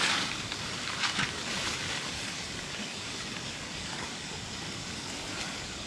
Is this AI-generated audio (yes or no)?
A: yes